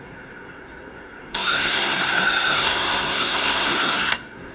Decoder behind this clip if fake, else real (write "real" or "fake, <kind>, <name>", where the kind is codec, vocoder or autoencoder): fake, codec, SNAC